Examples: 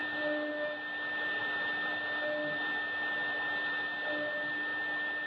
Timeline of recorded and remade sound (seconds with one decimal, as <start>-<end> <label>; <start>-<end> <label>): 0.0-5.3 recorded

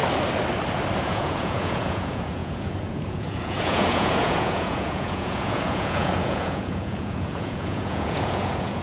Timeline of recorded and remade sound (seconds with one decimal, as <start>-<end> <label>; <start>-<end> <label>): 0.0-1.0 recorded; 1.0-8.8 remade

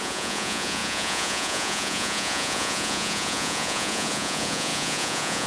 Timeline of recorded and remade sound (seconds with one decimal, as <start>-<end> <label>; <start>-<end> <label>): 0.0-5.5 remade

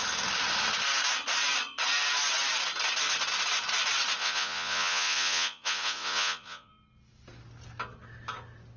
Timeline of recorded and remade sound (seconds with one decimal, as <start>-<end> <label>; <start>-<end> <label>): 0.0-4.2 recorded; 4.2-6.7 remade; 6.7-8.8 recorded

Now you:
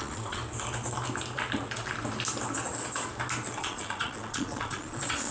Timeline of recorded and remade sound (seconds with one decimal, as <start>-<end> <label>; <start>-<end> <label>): 0.0-0.4 remade; 0.4-3.6 recorded; 3.6-5.3 remade